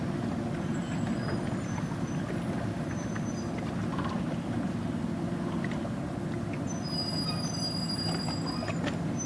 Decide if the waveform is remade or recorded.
recorded